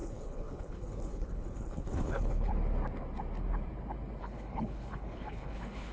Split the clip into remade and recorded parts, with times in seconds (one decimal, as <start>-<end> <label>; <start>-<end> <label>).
0.0-2.5 remade; 2.5-4.2 recorded; 4.2-5.9 remade

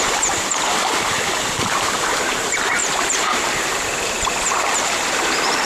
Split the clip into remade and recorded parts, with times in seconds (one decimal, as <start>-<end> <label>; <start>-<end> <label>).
0.0-5.6 remade

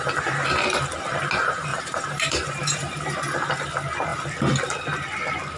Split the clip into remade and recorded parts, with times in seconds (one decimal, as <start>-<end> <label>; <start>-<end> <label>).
0.0-1.7 recorded; 1.7-3.4 remade; 3.4-5.6 recorded